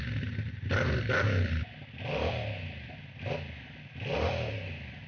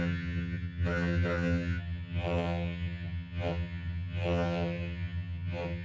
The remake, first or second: second